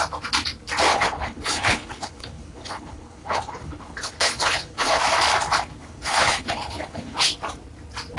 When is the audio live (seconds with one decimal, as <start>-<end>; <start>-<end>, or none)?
0.0-0.9; 5.0-5.8; 7.3-8.2